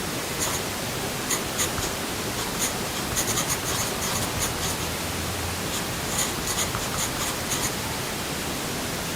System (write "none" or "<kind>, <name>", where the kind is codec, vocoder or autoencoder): vocoder, BigVGAN v2